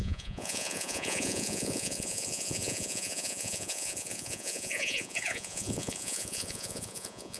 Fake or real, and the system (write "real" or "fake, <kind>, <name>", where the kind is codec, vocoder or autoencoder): fake, vocoder, Vocos